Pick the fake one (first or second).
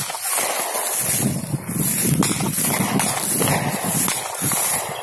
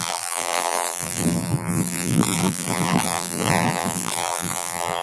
second